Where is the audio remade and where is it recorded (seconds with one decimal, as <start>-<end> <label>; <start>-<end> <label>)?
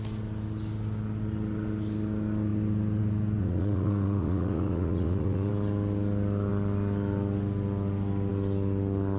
0.0-3.4 recorded; 3.4-5.5 remade; 5.5-9.2 recorded